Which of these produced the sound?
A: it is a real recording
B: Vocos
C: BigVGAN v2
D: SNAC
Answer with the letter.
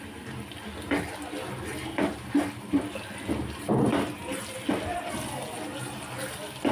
A